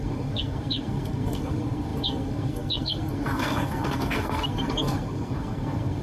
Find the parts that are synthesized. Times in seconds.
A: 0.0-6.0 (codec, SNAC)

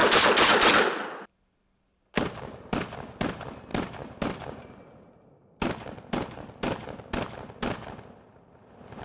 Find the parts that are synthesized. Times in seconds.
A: none

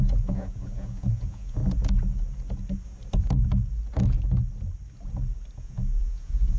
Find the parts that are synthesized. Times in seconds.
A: 0.0-1.6 (vocoder, Vocos); 5.6-6.6

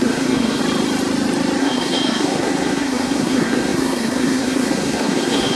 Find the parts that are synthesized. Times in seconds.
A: 0.0-0.6 (codec, SNAC); 1.6-5.5

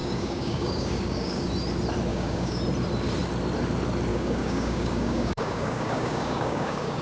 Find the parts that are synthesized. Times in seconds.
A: 0.0-1.5 (codec, DAC); 2.1-2.6; 4.1-7.0

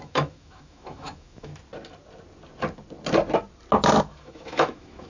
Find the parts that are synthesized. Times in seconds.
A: 0.0-1.5 (autoencoder, DAC-VAE); 4.0-5.1

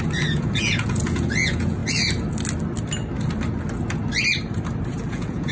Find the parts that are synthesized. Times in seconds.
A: 0.0-1.8 (vocoder, Vocos); 5.1-5.5

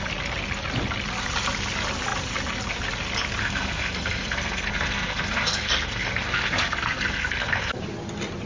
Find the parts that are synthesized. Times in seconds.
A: 3.4-7.8 (codec, SNAC)